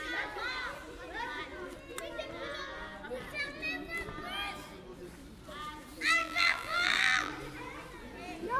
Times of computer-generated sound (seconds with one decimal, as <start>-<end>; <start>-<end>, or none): 6.2-7.3